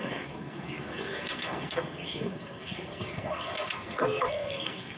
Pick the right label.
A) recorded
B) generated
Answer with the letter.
B